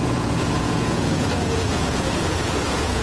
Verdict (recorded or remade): remade